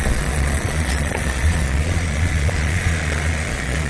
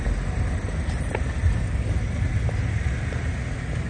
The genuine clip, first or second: second